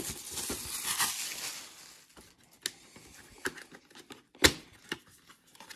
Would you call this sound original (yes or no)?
yes